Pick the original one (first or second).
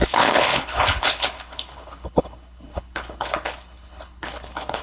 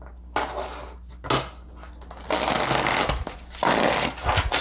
second